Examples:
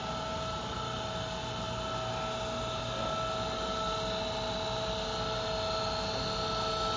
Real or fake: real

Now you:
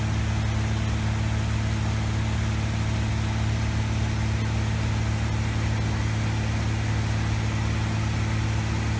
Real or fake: real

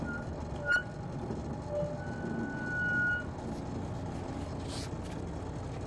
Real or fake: real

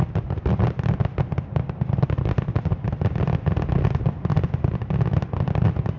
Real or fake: real